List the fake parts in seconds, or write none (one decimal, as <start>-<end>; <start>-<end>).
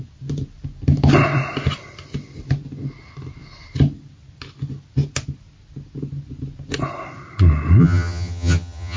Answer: 7.8-9.0